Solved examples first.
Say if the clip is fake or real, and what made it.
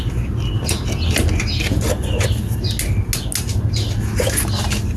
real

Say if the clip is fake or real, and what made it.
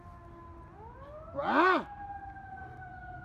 real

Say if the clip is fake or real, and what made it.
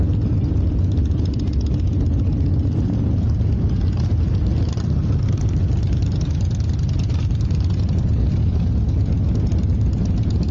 real